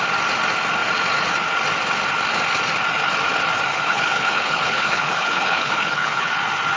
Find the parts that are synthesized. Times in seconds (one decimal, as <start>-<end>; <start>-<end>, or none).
3.7-6.3